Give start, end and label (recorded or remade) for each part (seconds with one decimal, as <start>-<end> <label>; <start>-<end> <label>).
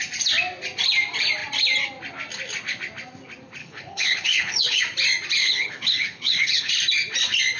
0.0-3.6 recorded; 3.6-4.8 remade; 4.8-5.4 recorded; 5.4-6.7 remade; 6.7-7.6 recorded